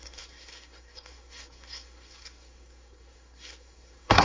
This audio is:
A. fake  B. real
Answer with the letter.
A